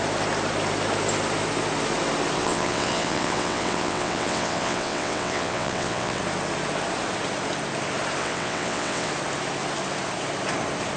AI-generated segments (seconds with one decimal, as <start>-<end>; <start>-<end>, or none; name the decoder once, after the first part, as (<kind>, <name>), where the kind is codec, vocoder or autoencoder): 2.4-6.2 (vocoder, WaveNeXt); 8.2-9.1